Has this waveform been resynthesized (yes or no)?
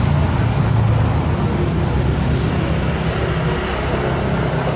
no